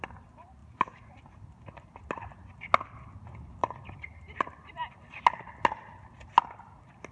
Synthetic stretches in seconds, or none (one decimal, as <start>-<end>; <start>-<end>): 3.6-4.9